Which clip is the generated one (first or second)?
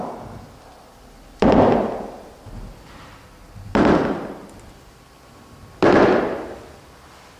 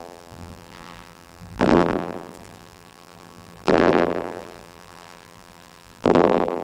second